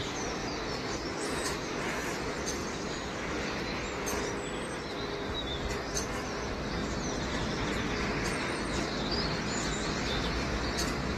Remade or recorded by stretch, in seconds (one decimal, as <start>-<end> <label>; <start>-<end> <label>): 0.0-0.4 recorded; 0.4-1.7 remade; 1.7-2.6 recorded; 2.6-3.6 remade; 3.6-11.2 recorded